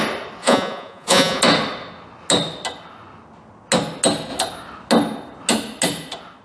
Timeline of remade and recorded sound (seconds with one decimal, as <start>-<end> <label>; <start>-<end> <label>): 0.0-0.4 recorded; 0.4-1.4 remade; 1.4-6.4 recorded